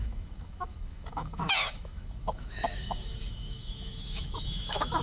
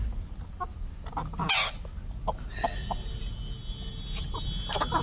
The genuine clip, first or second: second